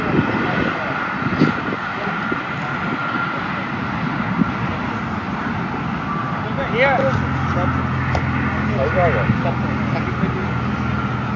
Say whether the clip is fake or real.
real